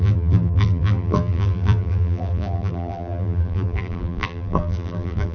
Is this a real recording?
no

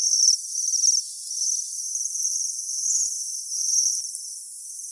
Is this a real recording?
yes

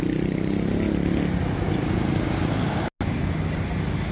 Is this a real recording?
yes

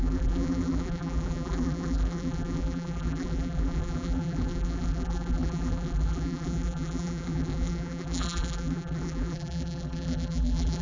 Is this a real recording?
no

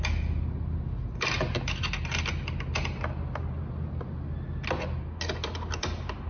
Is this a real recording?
yes